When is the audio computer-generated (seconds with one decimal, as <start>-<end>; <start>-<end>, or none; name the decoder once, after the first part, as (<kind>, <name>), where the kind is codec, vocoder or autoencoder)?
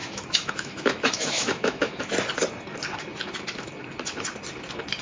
0.0-2.1 (autoencoder, DAC-VAE)